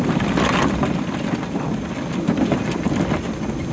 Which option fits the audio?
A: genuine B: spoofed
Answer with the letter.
A